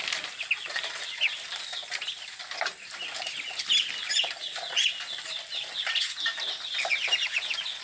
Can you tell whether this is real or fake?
real